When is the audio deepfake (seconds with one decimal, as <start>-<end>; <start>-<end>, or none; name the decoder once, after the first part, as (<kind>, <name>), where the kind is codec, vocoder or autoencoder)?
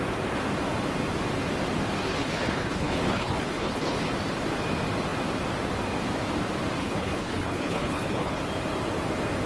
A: 2.1-4.1 (codec, HILCodec); 6.8-8.4